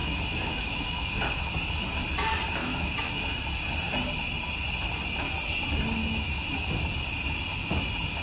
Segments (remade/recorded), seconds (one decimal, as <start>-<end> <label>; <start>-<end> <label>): 0.0-1.5 remade; 1.5-2.6 recorded; 2.6-3.4 remade; 3.4-6.0 recorded; 6.0-6.8 remade; 6.8-8.2 recorded